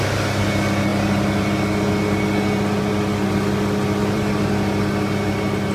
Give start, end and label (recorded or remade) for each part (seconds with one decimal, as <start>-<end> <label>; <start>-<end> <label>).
0.0-4.0 recorded; 4.0-4.5 remade; 4.5-5.7 recorded